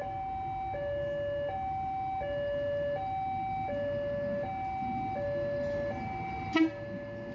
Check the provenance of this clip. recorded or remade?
recorded